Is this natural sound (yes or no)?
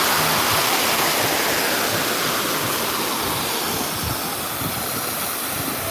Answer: yes